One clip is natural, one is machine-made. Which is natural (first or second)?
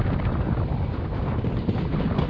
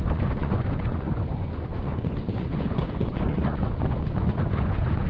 first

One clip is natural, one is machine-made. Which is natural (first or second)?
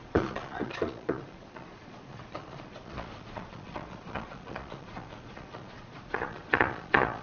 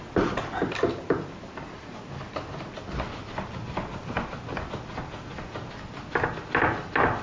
second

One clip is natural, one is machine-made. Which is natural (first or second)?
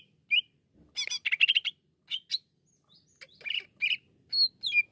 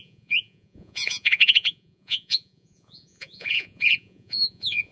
first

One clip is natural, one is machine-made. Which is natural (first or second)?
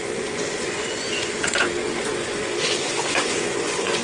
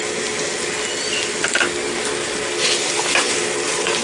second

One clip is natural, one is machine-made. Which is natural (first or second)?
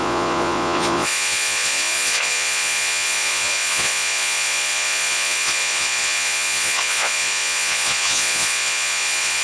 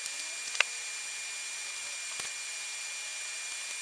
second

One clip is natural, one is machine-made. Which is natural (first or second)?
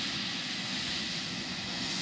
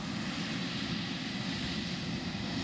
second